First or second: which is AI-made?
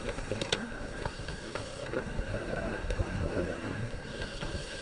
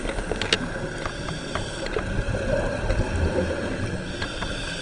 first